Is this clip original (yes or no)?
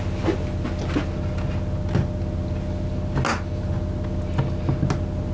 yes